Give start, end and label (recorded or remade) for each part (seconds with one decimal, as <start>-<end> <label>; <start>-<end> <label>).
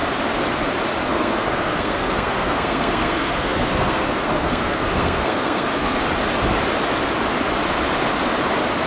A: 0.0-1.0 recorded; 1.0-6.0 remade; 6.0-8.9 recorded